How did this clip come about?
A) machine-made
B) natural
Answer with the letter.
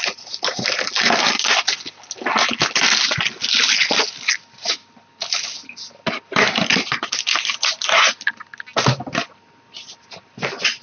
B